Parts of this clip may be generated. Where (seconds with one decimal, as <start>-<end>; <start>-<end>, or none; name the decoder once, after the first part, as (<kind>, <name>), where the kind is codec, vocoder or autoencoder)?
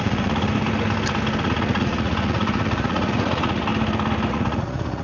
0.0-0.5 (vocoder, Vocos); 1.4-3.7; 4.3-5.0